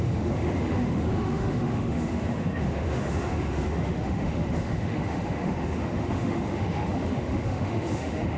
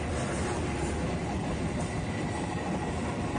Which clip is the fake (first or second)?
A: first